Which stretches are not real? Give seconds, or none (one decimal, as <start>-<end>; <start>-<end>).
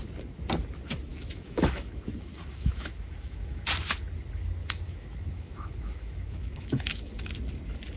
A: 1.1-3.6; 4.6-7.3